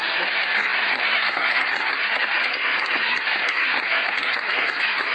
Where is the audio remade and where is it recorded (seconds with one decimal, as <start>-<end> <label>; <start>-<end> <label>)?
0.0-5.1 remade